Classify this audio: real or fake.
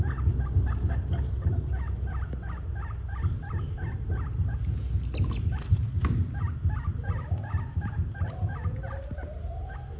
real